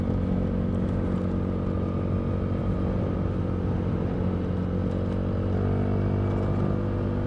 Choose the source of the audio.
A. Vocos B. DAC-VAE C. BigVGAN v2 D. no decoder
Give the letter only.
D